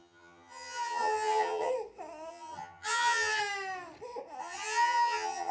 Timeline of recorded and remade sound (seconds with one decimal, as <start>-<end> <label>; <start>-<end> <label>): 0.0-1.7 remade; 1.7-2.3 recorded; 2.3-3.4 remade; 3.4-4.4 recorded; 4.4-5.5 remade